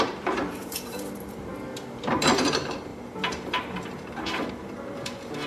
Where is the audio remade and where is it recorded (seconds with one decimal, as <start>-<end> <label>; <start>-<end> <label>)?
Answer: 0.0-1.5 remade; 1.5-2.1 recorded; 2.1-5.5 remade